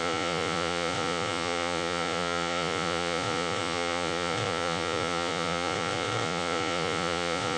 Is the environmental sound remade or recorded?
remade